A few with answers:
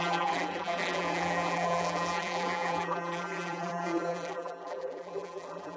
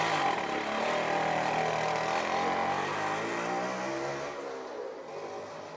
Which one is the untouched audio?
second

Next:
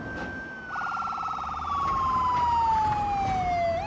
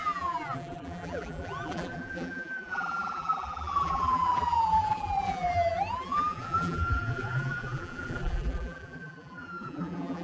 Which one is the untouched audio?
first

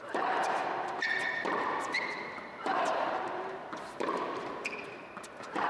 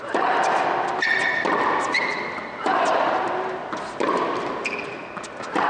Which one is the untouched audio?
second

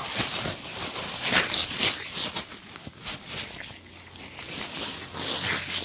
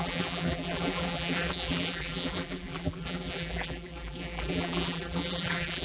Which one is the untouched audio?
first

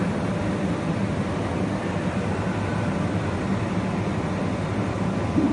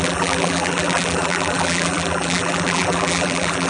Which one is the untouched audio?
first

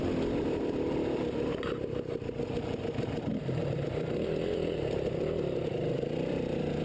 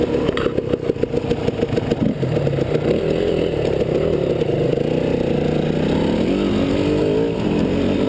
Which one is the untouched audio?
second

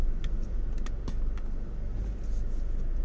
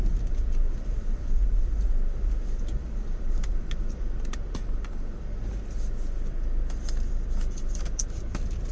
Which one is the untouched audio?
first